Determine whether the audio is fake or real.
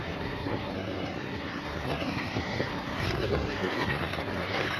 fake